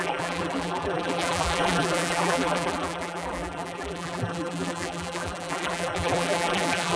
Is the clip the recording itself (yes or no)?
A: no